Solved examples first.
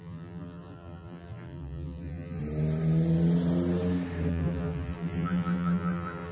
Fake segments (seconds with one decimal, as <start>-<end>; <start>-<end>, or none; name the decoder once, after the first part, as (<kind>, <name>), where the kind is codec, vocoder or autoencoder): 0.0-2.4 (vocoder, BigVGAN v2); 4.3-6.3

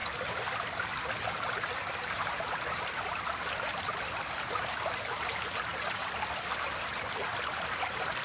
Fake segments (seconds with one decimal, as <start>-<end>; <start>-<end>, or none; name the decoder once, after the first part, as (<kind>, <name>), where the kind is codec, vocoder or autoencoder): none

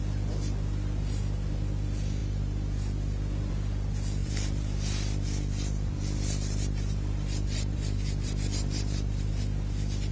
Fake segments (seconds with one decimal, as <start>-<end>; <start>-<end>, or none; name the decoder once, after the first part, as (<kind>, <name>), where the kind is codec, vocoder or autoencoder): 4.2-9.3 (vocoder, BigVGAN v2)

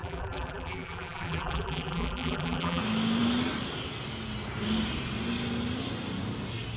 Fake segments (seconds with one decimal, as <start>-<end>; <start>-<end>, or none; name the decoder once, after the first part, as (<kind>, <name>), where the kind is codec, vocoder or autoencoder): 0.0-2.8 (vocoder, BigVGAN v2)